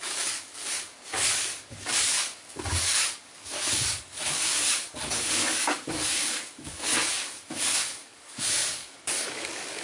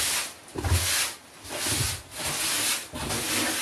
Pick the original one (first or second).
second